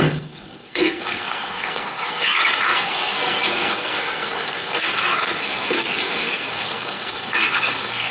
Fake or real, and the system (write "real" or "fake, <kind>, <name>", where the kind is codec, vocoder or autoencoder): fake, codec, SNAC